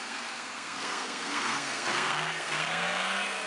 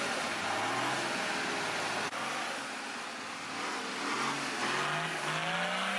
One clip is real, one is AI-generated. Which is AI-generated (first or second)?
first